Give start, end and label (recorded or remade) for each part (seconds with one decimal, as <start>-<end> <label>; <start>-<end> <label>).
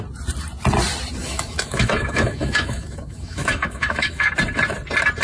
0.0-1.2 recorded; 1.2-4.3 remade; 4.3-5.2 recorded